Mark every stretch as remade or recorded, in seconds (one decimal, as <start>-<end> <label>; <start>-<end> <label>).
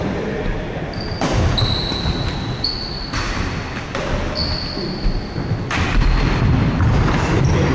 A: 0.0-7.7 recorded